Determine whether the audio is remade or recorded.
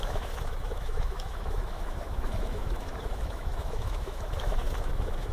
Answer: remade